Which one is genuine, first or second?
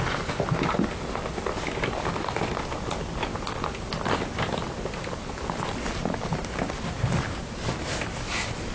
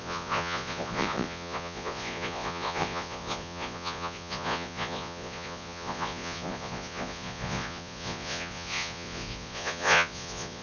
first